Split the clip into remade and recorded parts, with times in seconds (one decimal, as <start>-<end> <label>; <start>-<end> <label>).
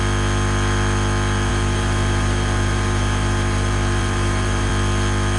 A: 0.0-1.5 recorded; 1.5-4.7 remade; 4.7-5.4 recorded